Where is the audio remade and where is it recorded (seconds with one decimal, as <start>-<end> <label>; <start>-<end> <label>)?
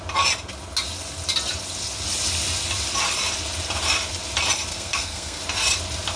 0.0-4.7 recorded; 4.7-5.4 remade; 5.4-6.2 recorded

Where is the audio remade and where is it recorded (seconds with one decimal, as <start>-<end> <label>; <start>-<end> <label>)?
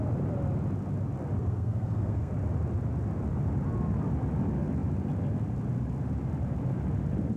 0.0-1.4 recorded; 1.4-2.3 remade; 2.3-7.4 recorded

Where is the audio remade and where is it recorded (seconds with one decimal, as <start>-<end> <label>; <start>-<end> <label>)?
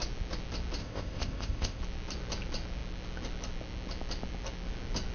0.0-0.8 recorded; 0.8-1.8 remade; 1.8-5.1 recorded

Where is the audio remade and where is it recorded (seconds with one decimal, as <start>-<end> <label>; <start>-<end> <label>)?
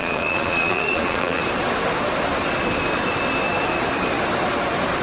0.0-1.4 remade; 1.4-5.0 recorded